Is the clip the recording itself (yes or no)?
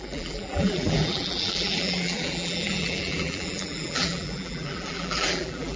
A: no